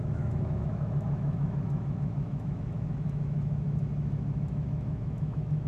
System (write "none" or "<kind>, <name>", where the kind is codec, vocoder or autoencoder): autoencoder, DAC-VAE